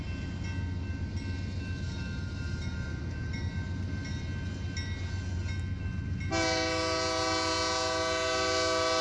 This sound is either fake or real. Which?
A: real